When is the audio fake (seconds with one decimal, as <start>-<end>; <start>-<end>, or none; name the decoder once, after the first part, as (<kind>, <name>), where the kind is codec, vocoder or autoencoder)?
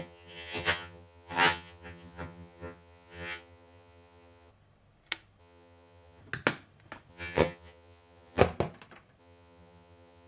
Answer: 0.0-4.5 (vocoder, HiFi-GAN); 5.4-6.2; 7.1-8.4; 9.2-10.3